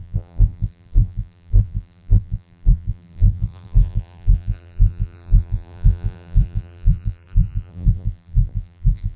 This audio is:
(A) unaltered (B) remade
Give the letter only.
B